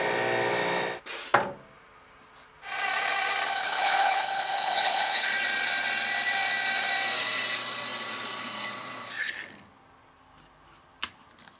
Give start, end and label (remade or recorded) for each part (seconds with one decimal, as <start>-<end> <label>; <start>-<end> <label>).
0.0-3.6 recorded; 3.6-5.3 remade; 5.3-11.6 recorded